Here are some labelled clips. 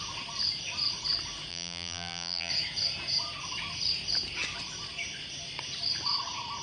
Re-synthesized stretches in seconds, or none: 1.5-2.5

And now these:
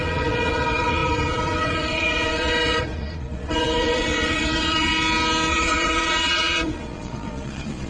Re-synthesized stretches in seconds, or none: 0.0-4.9; 5.5-7.9

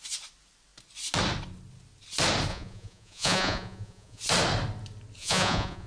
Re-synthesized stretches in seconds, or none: 2.5-4.2; 5.2-5.9

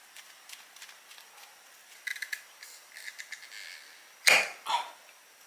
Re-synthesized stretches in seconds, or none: none

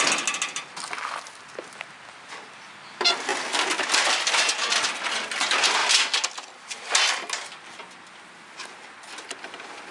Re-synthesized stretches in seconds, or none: none

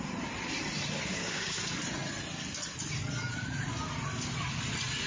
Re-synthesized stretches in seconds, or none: 1.1-1.6